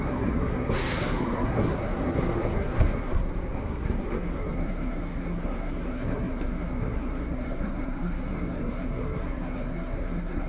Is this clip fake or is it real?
fake